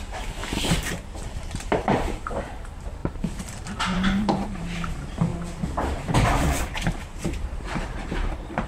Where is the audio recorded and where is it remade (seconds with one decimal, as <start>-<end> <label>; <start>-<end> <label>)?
0.0-0.4 recorded; 0.4-2.4 remade; 2.4-3.0 recorded; 3.0-4.6 remade; 4.6-7.1 recorded; 7.1-8.7 remade